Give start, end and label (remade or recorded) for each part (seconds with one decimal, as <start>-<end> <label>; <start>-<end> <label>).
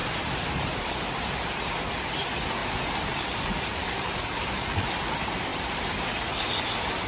0.0-1.1 remade; 1.1-2.6 recorded; 2.6-4.9 remade; 4.9-5.5 recorded; 5.5-6.6 remade; 6.6-7.1 recorded